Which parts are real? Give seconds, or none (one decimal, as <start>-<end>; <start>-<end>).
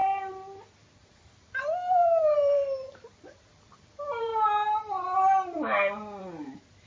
0.0-0.8; 4.3-6.9